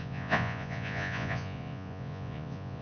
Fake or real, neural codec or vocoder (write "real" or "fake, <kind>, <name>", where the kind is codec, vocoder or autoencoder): fake, vocoder, Vocos